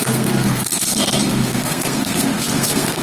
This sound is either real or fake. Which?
fake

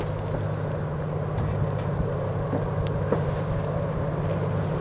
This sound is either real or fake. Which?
real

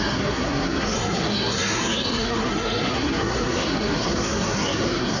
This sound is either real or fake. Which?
fake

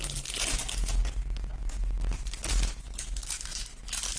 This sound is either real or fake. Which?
real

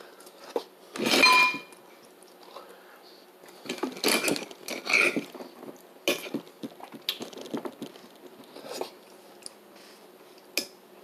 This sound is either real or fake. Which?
real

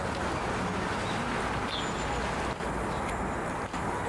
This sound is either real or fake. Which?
real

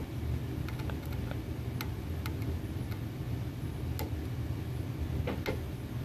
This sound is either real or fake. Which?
real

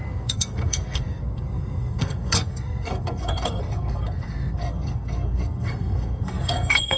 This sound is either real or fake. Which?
fake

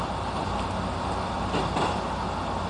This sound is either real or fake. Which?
real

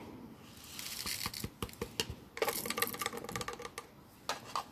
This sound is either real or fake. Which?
real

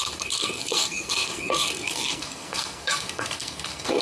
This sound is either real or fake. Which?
fake